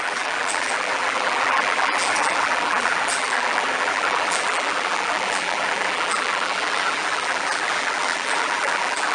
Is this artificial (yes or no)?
yes